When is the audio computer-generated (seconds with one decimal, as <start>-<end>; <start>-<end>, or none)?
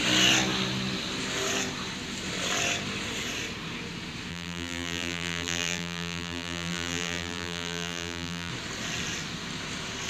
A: 4.3-8.5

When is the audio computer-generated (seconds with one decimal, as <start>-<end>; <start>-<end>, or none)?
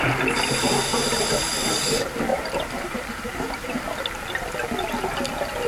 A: 0.9-1.5; 2.3-3.8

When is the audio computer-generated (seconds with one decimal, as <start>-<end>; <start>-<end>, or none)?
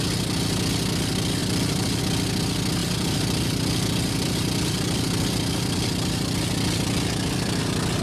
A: 1.4-2.0; 2.8-7.6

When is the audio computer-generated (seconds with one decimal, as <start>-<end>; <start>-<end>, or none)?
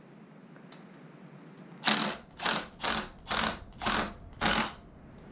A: none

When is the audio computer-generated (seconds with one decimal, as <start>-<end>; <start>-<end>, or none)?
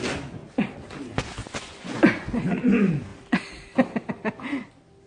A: 1.4-2.3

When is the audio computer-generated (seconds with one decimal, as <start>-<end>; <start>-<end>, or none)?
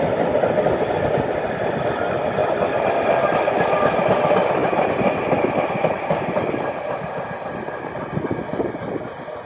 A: none